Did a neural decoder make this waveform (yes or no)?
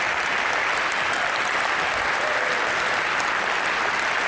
no